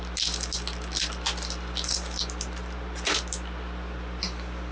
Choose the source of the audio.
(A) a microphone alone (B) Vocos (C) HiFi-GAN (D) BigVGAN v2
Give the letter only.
A